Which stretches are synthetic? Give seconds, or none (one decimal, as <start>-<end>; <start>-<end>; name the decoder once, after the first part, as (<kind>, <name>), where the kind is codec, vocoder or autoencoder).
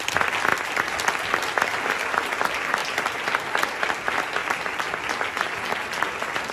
0.5-1.3 (vocoder, BigVGAN v2); 2.8-3.9; 4.4-6.0